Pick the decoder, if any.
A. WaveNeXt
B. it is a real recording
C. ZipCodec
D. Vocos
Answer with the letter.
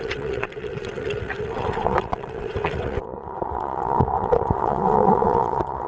A